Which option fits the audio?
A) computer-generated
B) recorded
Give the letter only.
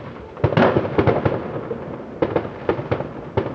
B